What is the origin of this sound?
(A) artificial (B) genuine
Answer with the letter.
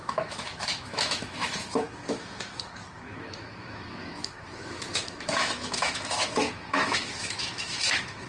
A